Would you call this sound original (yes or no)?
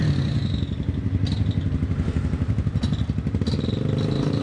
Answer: yes